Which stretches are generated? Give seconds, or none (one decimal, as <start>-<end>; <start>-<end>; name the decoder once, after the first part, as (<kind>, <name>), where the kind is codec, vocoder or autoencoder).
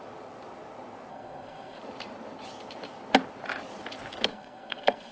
1.1-1.8 (codec, SNAC); 4.3-5.1